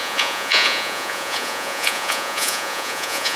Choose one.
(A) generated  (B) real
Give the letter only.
A